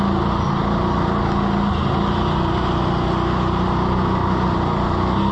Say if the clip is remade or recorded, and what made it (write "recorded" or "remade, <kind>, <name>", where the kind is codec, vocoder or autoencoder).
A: recorded